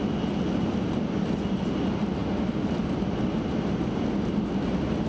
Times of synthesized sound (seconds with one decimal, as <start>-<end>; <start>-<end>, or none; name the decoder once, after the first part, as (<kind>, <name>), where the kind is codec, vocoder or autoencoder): none